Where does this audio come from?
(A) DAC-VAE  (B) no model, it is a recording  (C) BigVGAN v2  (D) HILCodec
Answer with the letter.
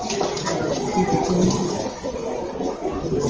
B